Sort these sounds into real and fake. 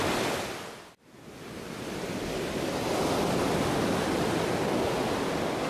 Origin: real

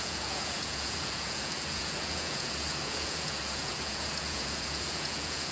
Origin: fake